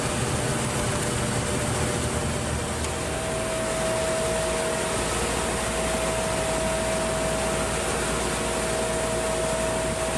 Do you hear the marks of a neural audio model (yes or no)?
no